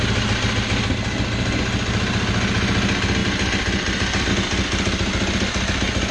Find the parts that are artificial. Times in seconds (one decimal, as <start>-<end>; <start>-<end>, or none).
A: none